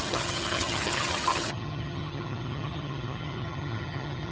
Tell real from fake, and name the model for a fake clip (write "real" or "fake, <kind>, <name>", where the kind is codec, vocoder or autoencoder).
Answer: fake, vocoder, HiFi-GAN